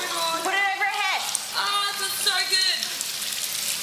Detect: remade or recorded recorded